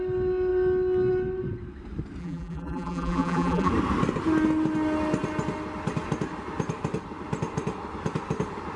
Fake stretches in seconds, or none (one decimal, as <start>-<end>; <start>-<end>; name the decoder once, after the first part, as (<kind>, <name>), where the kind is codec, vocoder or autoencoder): 2.2-3.7 (vocoder, BigVGAN v2)